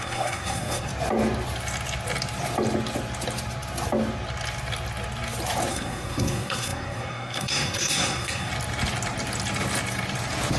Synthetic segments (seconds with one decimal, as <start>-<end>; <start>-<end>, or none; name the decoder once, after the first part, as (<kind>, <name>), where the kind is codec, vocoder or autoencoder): 0.0-0.9 (codec, SNAC); 5.7-8.5